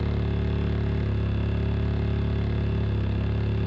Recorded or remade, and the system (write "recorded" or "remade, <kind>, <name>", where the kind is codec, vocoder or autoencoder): recorded